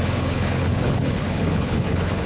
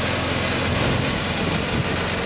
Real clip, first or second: second